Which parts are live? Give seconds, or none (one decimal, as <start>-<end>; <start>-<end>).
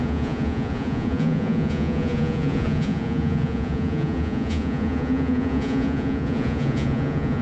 none